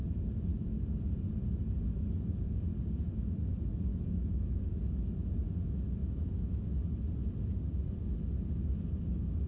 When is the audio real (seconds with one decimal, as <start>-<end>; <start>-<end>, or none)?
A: 0.0-3.9; 4.8-6.0; 6.7-9.5